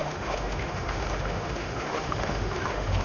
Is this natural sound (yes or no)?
no